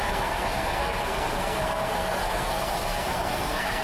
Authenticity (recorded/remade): remade